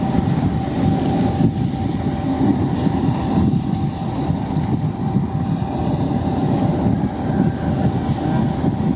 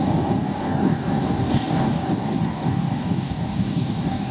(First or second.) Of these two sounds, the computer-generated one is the second